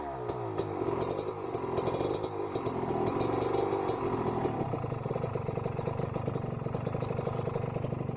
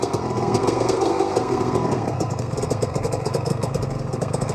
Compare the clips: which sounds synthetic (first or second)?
second